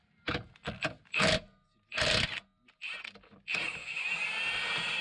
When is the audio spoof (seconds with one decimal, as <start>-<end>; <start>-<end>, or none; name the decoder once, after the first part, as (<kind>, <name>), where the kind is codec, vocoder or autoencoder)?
3.8-5.0 (vocoder, BigVGAN v2)

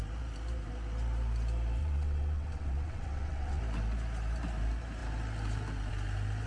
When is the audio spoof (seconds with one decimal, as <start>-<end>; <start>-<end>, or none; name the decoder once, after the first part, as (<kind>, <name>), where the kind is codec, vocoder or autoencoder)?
1.8-3.6 (vocoder, WaveNeXt)

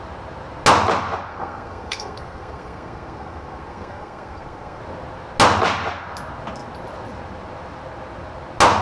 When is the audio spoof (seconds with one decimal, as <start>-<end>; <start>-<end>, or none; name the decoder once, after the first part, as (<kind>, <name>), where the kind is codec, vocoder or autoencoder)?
1.3-4.8 (codec, SNAC)

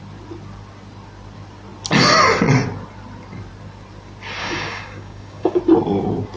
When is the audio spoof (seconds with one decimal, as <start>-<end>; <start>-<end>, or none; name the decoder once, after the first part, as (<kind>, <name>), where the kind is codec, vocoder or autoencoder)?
4.4-5.6 (codec, DAC)

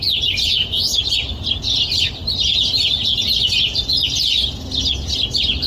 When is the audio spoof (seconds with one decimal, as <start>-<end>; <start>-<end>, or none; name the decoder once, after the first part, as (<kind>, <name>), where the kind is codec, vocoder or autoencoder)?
none

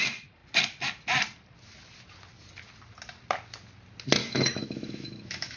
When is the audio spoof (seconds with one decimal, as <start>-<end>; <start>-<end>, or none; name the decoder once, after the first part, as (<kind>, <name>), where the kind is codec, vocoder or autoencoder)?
4.2-5.6 (autoencoder, DAC-VAE)

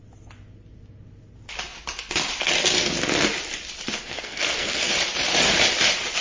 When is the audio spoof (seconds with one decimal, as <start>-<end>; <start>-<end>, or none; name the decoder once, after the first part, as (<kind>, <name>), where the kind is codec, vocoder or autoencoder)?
4.0-4.8 (codec, SNAC)